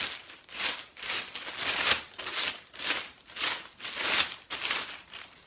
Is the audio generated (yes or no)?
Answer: no